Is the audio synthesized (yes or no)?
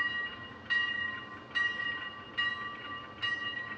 no